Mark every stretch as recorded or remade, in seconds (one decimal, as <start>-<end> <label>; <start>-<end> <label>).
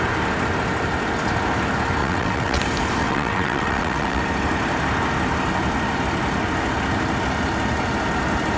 0.0-2.0 recorded; 2.0-2.6 remade; 2.6-3.0 recorded; 3.0-4.2 remade; 4.2-8.6 recorded